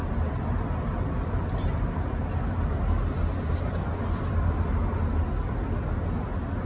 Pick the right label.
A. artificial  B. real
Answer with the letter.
B